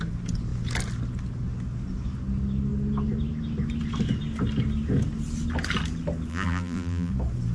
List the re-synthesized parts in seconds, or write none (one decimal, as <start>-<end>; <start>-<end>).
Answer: 6.3-7.1